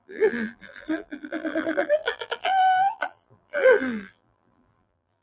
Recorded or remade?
remade